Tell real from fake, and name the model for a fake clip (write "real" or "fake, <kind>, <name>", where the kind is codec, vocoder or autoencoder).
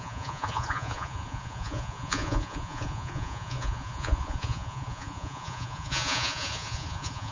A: fake, vocoder, Vocos